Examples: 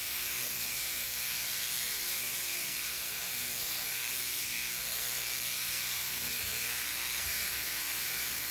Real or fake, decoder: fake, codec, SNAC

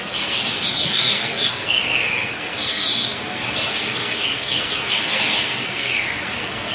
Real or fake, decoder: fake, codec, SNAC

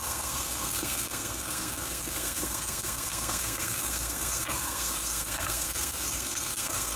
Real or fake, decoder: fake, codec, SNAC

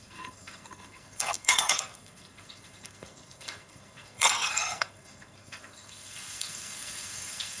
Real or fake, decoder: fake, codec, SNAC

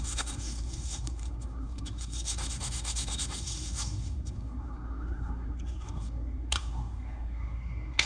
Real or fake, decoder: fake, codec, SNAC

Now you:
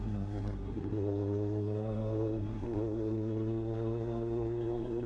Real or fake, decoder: fake, codec, SNAC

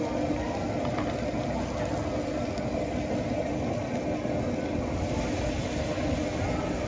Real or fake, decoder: real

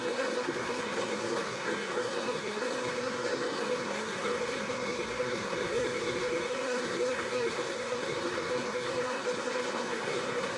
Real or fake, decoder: fake, codec, SNAC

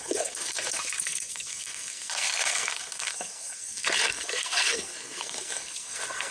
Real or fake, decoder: fake, codec, SNAC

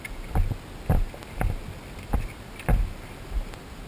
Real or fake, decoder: real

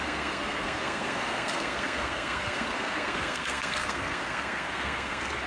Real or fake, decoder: fake, codec, SNAC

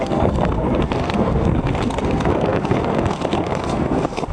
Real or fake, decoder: fake, codec, SNAC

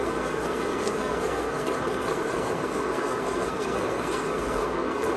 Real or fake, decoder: fake, codec, SNAC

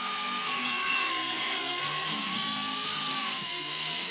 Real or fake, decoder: fake, codec, SNAC